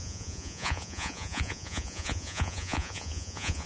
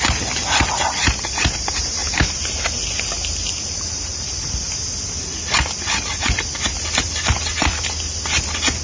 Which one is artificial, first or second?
first